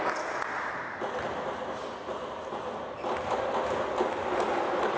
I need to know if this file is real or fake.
real